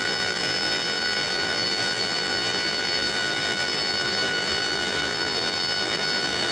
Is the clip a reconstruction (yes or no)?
yes